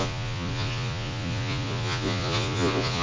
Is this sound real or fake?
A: fake